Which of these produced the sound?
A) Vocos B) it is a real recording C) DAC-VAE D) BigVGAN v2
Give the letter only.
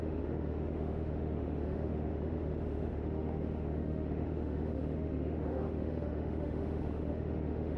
C